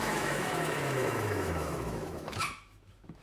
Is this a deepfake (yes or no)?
yes